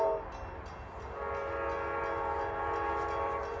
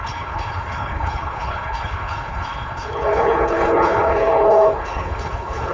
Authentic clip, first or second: first